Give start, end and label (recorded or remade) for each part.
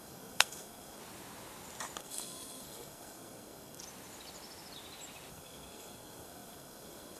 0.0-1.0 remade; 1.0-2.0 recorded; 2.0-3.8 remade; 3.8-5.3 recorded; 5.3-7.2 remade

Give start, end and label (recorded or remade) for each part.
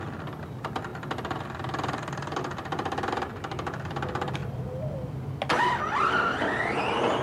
0.0-7.2 recorded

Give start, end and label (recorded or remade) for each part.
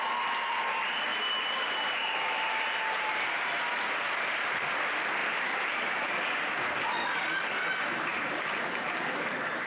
0.0-1.1 recorded; 1.1-3.6 remade; 3.6-5.2 recorded; 5.2-6.4 remade; 6.4-8.1 recorded; 8.1-9.0 remade; 9.0-9.7 recorded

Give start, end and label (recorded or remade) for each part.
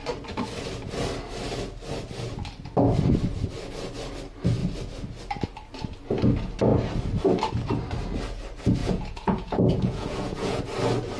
0.0-8.8 recorded; 8.8-10.6 remade; 10.6-11.2 recorded